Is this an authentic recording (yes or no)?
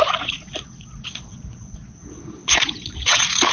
no